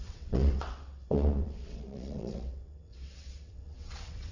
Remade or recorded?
remade